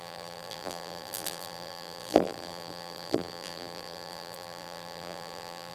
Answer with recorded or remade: remade